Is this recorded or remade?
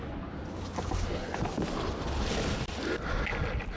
recorded